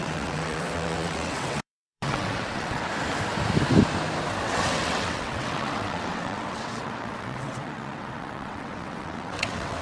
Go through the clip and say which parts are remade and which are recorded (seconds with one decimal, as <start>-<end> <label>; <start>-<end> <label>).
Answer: 0.0-2.9 remade; 2.9-4.4 recorded; 4.4-9.8 remade